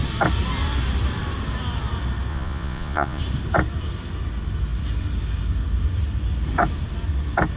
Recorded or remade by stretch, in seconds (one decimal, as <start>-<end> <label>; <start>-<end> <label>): 0.0-2.3 recorded; 2.3-3.2 remade; 3.2-7.6 recorded